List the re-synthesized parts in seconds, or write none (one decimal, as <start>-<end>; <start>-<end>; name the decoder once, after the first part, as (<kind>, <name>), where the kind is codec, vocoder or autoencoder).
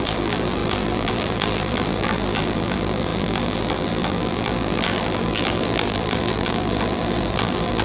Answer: 0.0-7.8 (vocoder, BigVGAN v2)